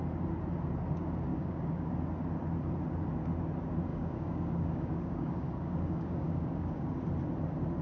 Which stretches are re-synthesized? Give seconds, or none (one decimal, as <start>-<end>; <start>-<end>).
1.3-1.9; 3.9-6.9